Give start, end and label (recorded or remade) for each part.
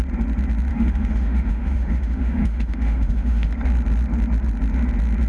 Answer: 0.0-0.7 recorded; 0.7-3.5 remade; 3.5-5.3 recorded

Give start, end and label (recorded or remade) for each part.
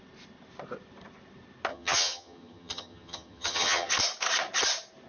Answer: 0.0-1.7 recorded; 1.7-3.9 remade; 3.9-5.1 recorded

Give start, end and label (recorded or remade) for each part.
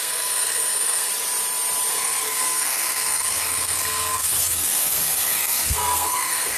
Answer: 0.0-1.1 remade; 1.1-1.9 recorded; 1.9-6.6 remade